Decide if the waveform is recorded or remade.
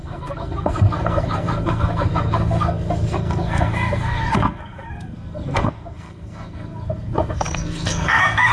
remade